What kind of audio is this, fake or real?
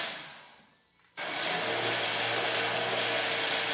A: real